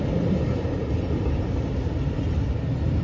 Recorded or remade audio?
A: recorded